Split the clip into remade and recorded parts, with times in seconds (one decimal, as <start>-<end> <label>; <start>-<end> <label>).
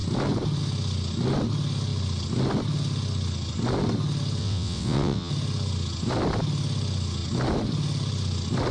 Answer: 0.0-4.4 recorded; 4.4-5.3 remade; 5.3-8.7 recorded